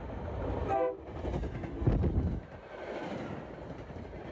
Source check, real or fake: real